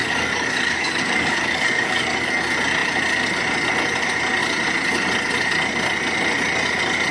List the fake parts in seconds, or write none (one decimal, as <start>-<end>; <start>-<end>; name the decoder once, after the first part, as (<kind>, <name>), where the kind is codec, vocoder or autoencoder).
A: 0.0-2.3 (codec, DAC)